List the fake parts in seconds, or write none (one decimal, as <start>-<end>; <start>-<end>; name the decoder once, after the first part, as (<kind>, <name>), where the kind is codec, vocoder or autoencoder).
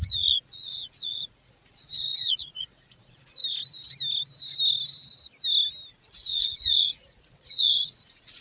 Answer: 0.0-3.4 (vocoder, Vocos); 5.9-8.4